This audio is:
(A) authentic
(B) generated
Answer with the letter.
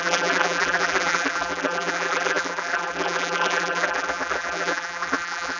B